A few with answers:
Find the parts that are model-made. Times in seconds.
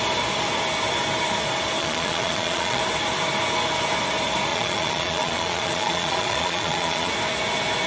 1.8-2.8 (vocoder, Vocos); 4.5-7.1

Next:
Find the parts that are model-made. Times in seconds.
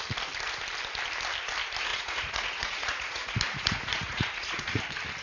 1.9-4.8 (vocoder, Vocos)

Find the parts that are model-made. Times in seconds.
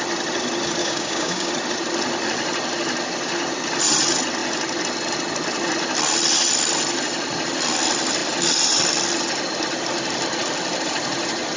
0.8-1.5 (codec, DAC)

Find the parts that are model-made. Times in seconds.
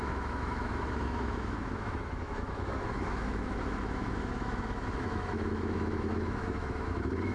0.0-7.3 (autoencoder, DAC-VAE)